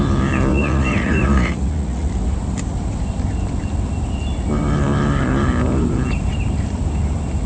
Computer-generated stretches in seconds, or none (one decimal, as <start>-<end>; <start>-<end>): 0.5-2.1